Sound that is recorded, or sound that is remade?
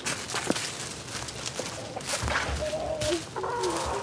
recorded